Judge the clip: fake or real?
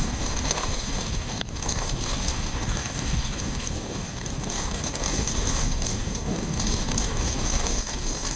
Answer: fake